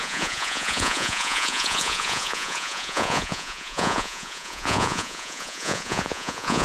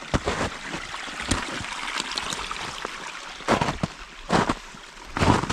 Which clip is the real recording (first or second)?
second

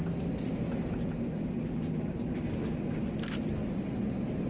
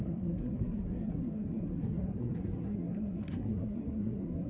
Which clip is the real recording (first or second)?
first